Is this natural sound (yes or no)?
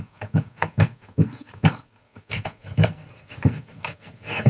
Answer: no